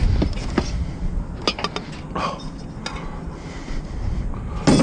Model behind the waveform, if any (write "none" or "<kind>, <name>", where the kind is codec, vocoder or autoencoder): none